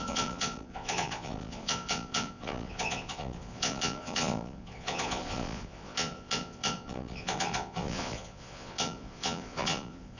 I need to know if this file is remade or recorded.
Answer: remade